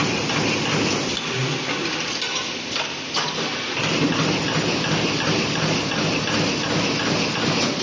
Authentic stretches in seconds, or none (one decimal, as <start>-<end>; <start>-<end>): 0.0-7.8